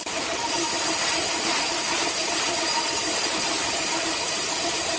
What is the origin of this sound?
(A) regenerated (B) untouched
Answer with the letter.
A